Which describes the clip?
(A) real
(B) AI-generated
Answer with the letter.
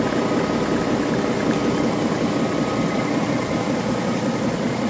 A